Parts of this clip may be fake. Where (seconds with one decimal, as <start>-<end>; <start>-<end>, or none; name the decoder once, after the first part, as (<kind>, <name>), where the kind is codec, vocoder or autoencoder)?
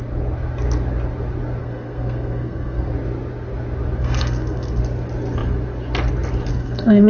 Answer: 1.6-2.9 (codec, SNAC); 4.0-4.8; 6.5-7.1